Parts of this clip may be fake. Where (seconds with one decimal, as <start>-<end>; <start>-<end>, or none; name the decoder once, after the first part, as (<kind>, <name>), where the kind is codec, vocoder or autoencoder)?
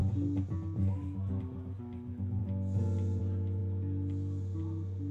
none